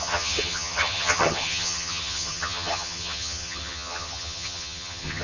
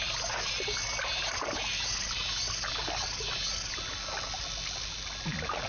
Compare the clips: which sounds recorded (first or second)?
second